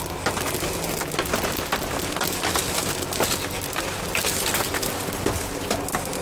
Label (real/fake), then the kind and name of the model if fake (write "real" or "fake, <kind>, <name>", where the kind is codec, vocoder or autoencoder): real